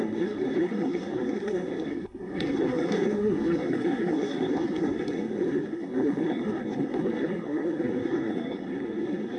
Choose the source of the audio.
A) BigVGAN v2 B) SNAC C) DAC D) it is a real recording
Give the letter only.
B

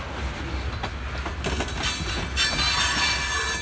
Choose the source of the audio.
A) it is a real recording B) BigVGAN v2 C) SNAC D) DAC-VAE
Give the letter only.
A